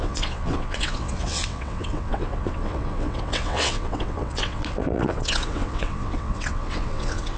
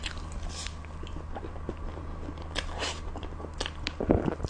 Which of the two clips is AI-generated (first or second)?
first